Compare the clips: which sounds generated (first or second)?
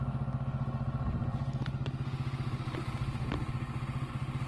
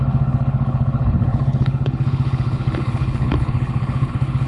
second